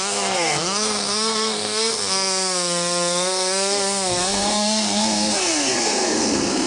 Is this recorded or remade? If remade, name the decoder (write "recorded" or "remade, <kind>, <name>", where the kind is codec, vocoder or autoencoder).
remade, codec, SNAC